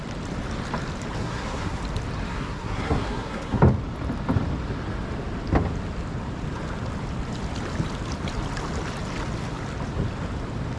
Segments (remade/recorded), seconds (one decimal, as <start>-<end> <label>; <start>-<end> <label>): 0.0-1.2 recorded; 1.2-1.8 remade; 1.8-2.3 recorded; 2.3-3.6 remade; 3.6-10.8 recorded